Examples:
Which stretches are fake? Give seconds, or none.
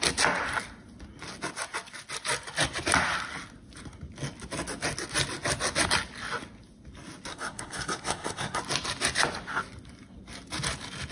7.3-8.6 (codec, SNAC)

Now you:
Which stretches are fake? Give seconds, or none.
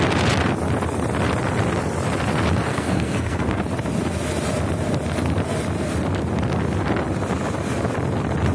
2.7-3.6 (codec, SNAC)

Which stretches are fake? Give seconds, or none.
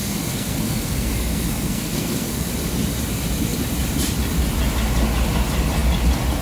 0.0-2.5 (codec, SNAC)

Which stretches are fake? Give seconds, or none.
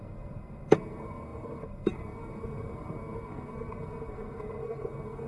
0.0-5.3 (codec, SNAC)